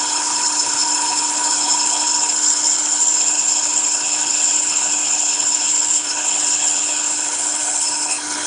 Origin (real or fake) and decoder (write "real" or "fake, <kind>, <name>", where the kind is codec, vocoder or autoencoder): fake, codec, HILCodec